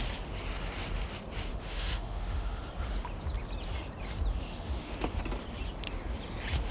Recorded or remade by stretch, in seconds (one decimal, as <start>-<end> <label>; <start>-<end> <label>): 0.0-1.5 recorded; 1.5-2.6 remade; 2.6-4.3 recorded; 4.3-5.2 remade; 5.2-6.7 recorded